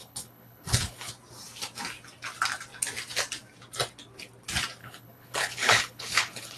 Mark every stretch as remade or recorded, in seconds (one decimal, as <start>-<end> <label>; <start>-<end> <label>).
0.0-1.1 remade; 1.1-4.8 recorded; 4.8-6.6 remade